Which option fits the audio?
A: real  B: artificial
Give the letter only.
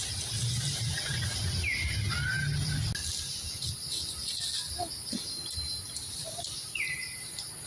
A